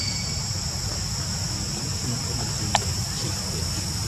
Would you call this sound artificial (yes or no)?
no